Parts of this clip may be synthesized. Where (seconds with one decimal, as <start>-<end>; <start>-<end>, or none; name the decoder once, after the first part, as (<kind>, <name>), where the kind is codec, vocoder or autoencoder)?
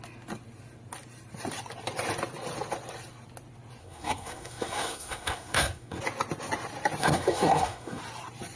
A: 3.8-6.0 (codec, SNAC); 7.0-8.0